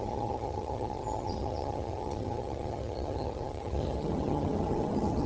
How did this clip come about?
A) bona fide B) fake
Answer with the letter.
B